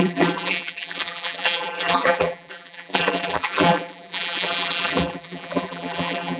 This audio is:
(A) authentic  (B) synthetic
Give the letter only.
B